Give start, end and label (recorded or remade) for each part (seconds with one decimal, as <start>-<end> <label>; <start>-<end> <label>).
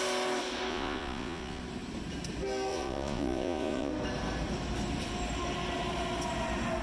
0.0-0.7 recorded; 0.7-1.6 remade; 1.6-2.7 recorded; 2.7-3.9 remade; 3.9-6.8 recorded